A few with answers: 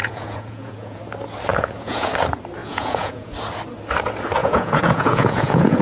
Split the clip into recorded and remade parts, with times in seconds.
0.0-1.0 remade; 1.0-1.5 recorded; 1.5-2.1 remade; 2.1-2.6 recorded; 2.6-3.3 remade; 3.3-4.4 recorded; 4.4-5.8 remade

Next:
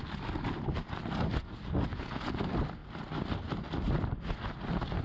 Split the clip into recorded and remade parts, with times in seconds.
0.0-1.9 recorded; 1.9-2.4 remade; 2.4-5.0 recorded

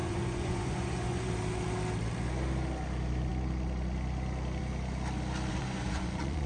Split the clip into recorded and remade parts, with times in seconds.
0.0-1.3 remade; 1.3-5.5 recorded; 5.5-6.5 remade

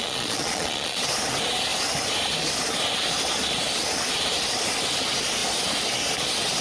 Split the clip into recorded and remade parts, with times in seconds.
0.0-1.0 remade; 1.0-6.6 recorded

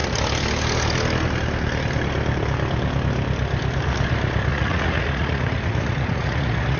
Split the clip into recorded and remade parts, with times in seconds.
0.0-4.5 recorded; 4.5-6.8 remade

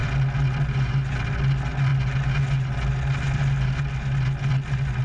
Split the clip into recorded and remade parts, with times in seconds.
0.0-5.0 recorded

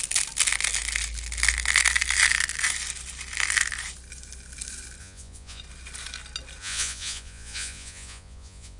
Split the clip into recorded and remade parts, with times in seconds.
0.0-5.0 recorded; 5.0-5.6 remade; 5.6-6.6 recorded; 6.6-8.8 remade

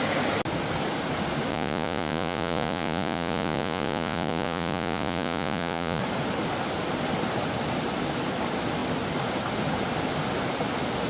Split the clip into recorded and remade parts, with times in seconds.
0.0-1.5 recorded; 1.5-6.0 remade; 6.0-11.1 recorded